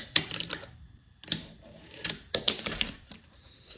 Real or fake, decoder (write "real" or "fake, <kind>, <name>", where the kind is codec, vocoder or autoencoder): fake, vocoder, BigVGAN v2